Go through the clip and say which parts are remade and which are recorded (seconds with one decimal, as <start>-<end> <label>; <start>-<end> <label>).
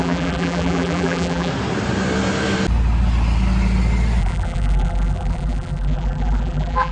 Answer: 0.0-1.5 remade; 1.5-4.2 recorded; 4.2-6.9 remade